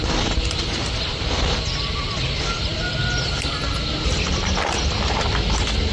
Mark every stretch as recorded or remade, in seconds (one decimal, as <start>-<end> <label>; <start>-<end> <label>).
0.0-5.9 recorded